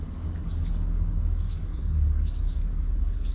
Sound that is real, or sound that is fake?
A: fake